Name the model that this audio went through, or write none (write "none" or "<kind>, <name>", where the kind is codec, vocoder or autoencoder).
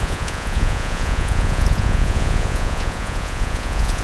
vocoder, Vocos